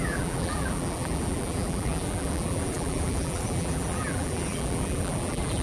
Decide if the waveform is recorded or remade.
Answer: remade